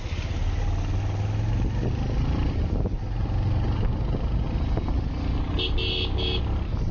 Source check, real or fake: real